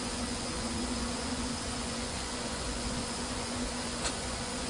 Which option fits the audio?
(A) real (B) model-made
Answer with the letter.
B